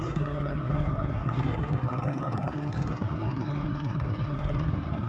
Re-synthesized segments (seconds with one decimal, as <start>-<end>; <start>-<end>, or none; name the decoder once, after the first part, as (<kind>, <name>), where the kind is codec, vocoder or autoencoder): 0.0-5.1 (codec, SNAC)